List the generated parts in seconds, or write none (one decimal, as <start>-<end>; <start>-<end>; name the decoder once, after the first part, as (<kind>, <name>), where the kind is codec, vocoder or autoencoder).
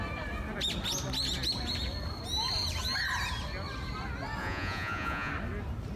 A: 4.4-5.3 (vocoder, Vocos)